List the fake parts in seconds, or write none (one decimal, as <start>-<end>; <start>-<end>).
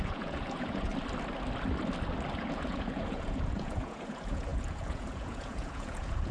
0.0-0.9; 2.4-6.3